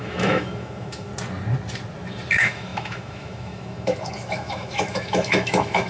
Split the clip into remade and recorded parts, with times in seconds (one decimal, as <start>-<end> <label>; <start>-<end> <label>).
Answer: 0.0-1.1 remade; 1.1-2.3 recorded; 2.3-5.9 remade